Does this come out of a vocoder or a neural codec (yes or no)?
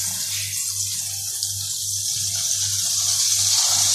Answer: no